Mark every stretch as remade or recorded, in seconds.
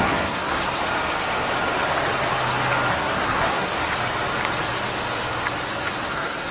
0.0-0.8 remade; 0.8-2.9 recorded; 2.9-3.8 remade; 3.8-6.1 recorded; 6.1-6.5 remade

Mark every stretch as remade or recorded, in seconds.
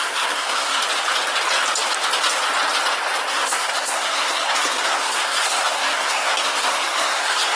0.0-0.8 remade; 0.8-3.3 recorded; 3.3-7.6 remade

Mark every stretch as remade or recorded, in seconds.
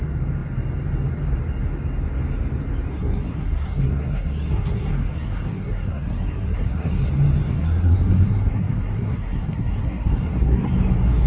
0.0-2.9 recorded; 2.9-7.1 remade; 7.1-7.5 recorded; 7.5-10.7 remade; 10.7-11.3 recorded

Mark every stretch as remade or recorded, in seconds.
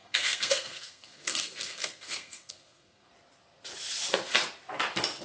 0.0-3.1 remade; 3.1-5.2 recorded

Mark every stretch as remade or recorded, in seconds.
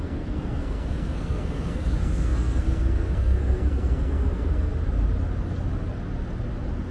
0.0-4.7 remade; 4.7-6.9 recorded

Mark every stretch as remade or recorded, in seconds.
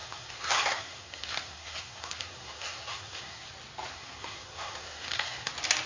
0.0-3.5 remade; 3.5-3.9 recorded; 3.9-5.5 remade; 5.5-5.9 recorded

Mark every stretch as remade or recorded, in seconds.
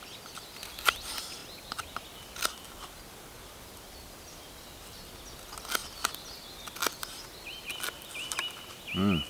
0.0-9.3 recorded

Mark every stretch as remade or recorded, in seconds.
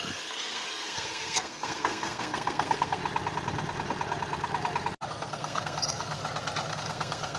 0.0-3.0 remade; 3.0-5.1 recorded; 5.1-6.2 remade; 6.2-6.7 recorded; 6.7-7.4 remade